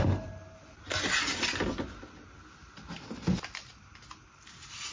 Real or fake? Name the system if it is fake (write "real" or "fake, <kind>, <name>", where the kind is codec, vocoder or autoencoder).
real